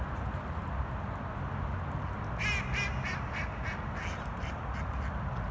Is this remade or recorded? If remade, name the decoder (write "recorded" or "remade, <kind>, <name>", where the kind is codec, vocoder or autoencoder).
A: recorded